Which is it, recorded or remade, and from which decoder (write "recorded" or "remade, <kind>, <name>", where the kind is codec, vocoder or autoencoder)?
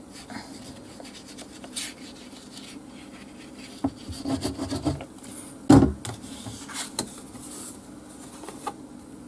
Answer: recorded